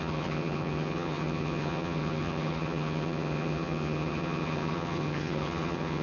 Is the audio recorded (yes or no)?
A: no